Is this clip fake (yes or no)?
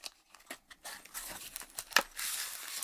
no